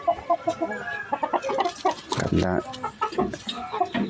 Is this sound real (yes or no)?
yes